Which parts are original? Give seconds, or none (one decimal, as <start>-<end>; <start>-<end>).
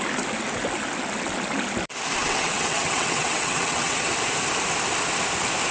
0.0-2.2; 4.1-5.7